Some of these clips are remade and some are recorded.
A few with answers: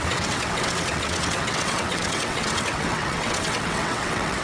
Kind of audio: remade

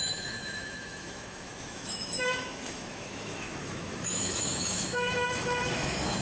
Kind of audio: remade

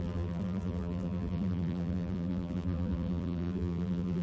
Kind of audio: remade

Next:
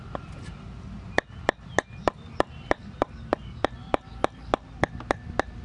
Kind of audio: recorded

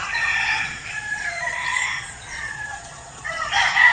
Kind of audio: remade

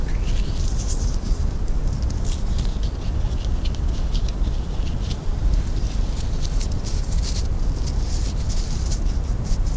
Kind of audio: recorded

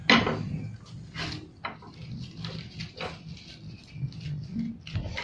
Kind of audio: recorded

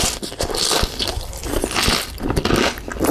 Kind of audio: recorded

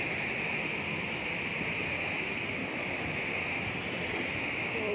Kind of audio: recorded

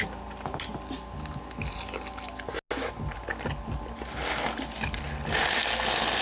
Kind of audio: recorded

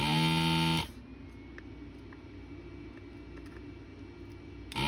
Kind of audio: recorded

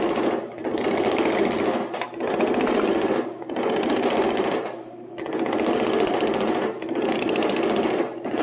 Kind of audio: recorded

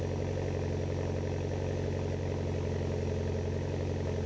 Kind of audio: recorded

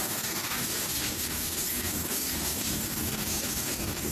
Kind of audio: remade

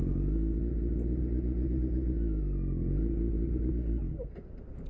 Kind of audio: recorded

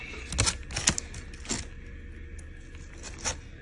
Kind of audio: recorded